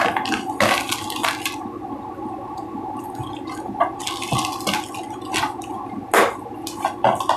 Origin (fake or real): real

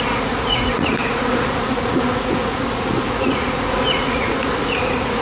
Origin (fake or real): fake